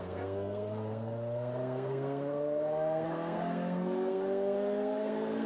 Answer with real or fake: fake